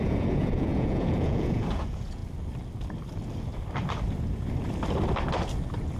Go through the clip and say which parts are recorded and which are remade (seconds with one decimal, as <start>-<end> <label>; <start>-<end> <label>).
0.0-2.2 remade; 2.2-6.0 recorded